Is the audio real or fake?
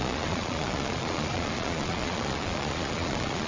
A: fake